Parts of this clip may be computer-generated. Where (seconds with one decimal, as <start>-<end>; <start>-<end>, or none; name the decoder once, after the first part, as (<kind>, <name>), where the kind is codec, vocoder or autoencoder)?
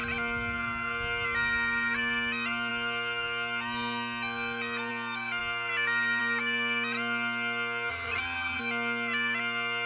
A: 7.9-8.6 (vocoder, HiFi-GAN)